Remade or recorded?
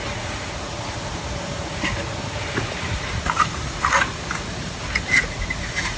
remade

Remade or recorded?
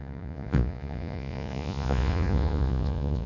remade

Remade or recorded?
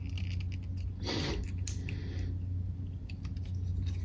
recorded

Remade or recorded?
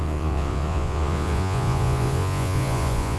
remade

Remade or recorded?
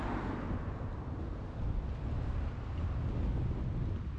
recorded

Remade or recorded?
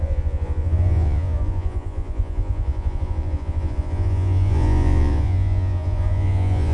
remade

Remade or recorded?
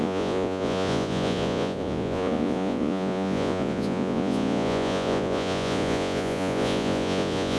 remade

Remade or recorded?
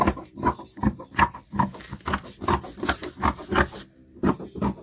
recorded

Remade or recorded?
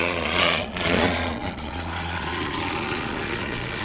remade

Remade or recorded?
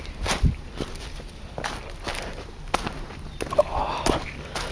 recorded